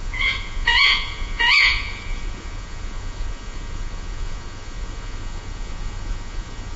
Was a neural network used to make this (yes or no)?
yes